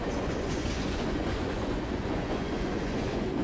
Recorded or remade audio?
remade